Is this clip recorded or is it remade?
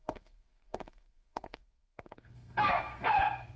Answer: remade